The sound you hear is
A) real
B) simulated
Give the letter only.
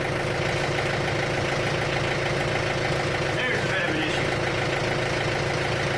A